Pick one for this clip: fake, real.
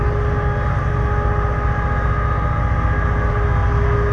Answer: real